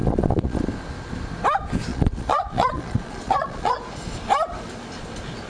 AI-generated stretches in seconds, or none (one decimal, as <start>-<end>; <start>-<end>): 0.0-0.6; 1.9-3.9